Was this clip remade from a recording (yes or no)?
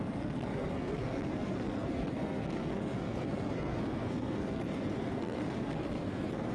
yes